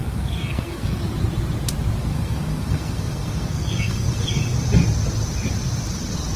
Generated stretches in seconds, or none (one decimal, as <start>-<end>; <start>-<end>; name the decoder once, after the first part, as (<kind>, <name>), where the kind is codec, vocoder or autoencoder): 0.0-1.0 (codec, SNAC); 2.0-4.4